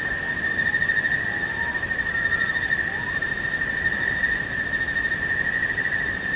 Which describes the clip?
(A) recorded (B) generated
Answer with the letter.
A